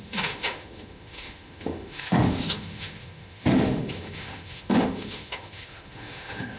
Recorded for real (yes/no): no